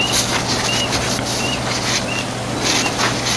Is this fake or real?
real